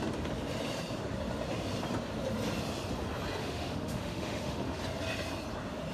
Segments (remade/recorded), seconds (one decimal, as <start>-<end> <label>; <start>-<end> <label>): 0.0-3.4 recorded; 3.4-4.8 remade; 4.8-5.9 recorded